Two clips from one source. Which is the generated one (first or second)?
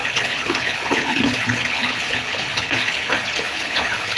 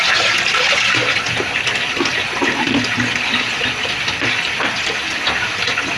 first